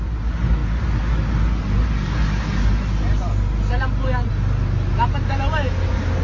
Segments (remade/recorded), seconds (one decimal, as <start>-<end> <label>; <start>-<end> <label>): 0.0-6.2 recorded